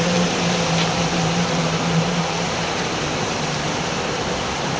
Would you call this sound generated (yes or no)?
yes